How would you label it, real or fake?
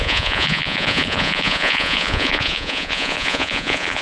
fake